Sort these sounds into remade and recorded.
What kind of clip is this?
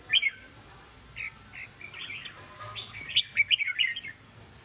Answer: recorded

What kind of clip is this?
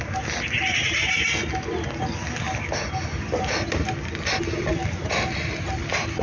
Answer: recorded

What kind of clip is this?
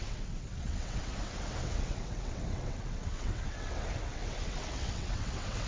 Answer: remade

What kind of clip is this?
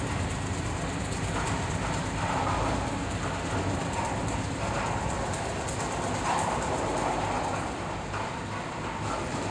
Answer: recorded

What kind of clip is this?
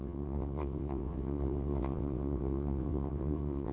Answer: remade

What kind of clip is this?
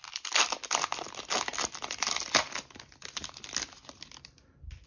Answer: recorded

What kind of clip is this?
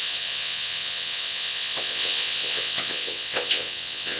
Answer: remade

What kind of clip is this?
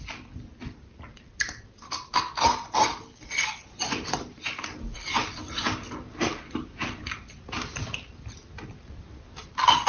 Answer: recorded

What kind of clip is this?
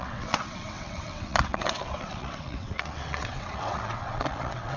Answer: remade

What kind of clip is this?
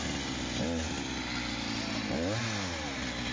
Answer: recorded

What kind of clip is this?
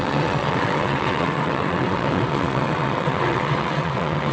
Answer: remade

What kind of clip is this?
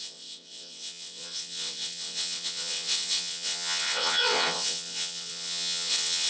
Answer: remade